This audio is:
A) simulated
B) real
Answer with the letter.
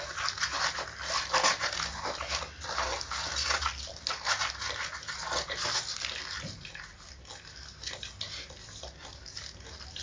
B